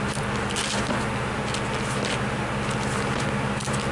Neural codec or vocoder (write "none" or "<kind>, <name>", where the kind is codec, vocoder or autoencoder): none